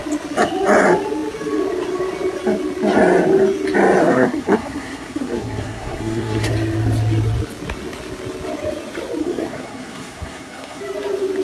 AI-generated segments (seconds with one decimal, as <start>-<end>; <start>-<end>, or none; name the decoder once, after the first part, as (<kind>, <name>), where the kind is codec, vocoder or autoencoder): 4.0-6.5 (codec, SNAC); 9.2-10.8